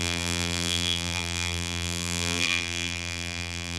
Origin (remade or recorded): remade